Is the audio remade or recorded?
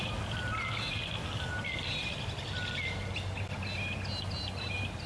recorded